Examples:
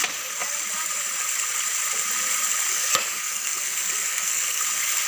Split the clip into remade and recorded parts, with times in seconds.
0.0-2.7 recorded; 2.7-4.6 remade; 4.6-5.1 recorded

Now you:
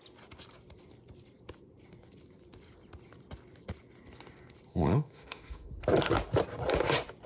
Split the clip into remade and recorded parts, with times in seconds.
0.0-4.7 recorded; 4.7-5.7 remade; 5.7-7.3 recorded

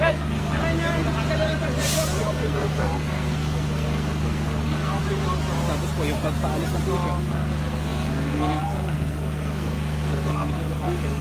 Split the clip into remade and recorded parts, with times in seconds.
0.0-0.6 remade; 0.6-2.2 recorded; 2.2-5.0 remade; 5.0-7.3 recorded; 7.3-11.2 remade

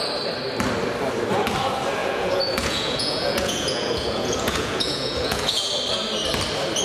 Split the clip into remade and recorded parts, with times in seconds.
0.0-2.0 recorded; 2.0-5.7 remade; 5.7-6.8 recorded

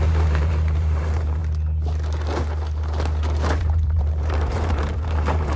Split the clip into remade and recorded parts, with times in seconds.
0.0-1.4 remade; 1.4-3.6 recorded; 3.6-5.6 remade

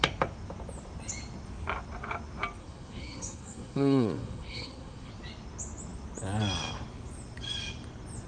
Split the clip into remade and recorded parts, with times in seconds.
0.0-2.6 recorded; 2.6-5.1 remade; 5.1-8.3 recorded